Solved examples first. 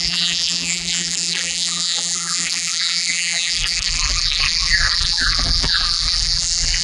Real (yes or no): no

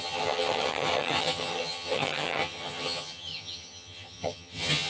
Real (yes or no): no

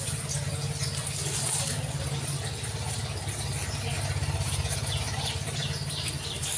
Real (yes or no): yes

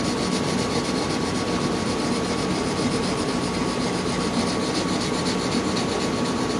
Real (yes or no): yes